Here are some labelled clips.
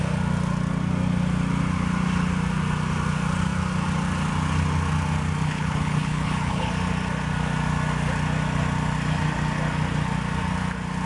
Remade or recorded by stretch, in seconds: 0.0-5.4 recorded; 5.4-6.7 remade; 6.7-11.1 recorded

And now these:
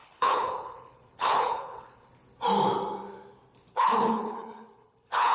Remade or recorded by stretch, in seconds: 0.0-2.1 remade; 2.1-3.7 recorded; 3.7-5.3 remade

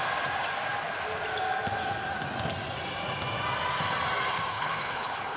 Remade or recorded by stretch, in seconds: 0.0-4.5 recorded; 4.5-5.4 remade

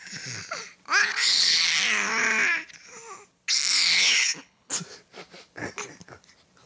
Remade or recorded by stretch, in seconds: 0.0-1.0 recorded; 1.0-1.6 remade; 1.6-3.9 recorded; 3.9-4.7 remade; 4.7-6.7 recorded

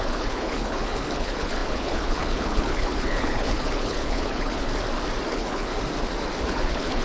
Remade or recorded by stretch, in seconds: 0.0-4.7 remade; 4.7-5.3 recorded; 5.3-5.7 remade; 5.7-6.4 recorded; 6.4-7.0 remade

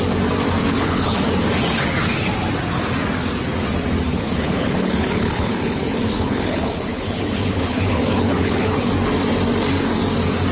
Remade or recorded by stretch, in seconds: 0.0-0.6 recorded; 0.6-1.2 remade; 1.2-4.1 recorded; 4.1-8.9 remade; 8.9-10.5 recorded

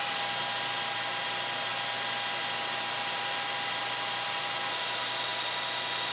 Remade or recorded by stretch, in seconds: 0.0-6.1 recorded

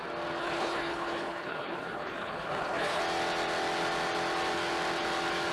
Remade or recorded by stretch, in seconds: 0.0-0.4 recorded; 0.4-3.0 remade; 3.0-5.5 recorded